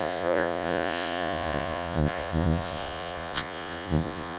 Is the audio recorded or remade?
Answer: remade